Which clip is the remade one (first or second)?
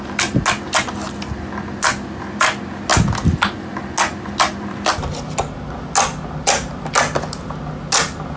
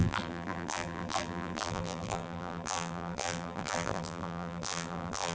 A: second